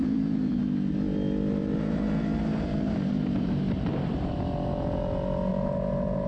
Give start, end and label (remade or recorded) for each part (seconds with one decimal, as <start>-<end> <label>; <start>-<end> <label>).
0.0-0.6 remade; 0.6-1.6 recorded; 1.6-4.3 remade; 4.3-5.5 recorded; 5.5-6.3 remade